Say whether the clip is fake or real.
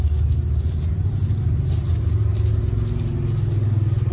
real